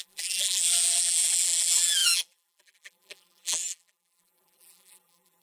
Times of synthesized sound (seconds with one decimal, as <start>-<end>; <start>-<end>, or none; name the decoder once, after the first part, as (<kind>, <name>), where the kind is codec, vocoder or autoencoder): 0.0-5.4 (vocoder, BigVGAN v2)